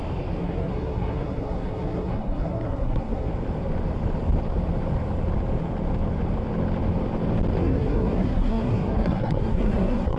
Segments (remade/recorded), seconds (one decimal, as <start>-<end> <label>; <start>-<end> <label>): 0.0-0.4 recorded; 0.4-3.3 remade; 3.3-7.6 recorded; 7.6-10.2 remade